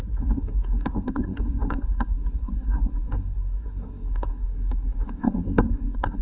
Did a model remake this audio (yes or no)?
yes